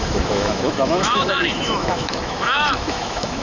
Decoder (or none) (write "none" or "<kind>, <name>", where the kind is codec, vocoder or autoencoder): autoencoder, DAC-VAE